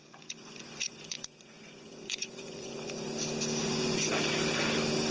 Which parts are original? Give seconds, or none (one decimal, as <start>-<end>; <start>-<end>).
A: 3.1-3.6; 4.1-5.1